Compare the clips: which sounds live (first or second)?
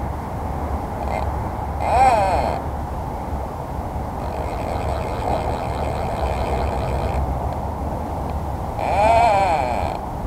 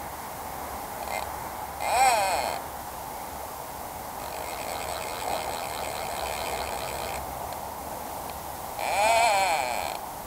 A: second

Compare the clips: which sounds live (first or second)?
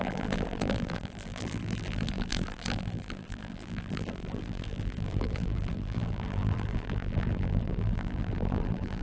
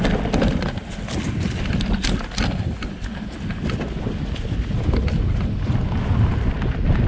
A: second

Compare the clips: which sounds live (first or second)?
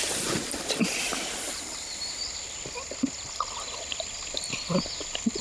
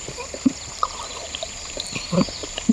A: first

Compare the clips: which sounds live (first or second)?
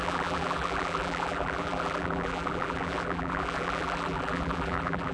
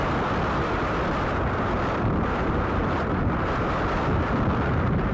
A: second